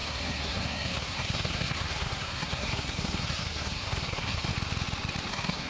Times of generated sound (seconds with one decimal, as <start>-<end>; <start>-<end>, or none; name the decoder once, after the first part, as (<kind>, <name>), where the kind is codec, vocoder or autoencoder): 0.0-4.5 (codec, SNAC); 5.3-5.7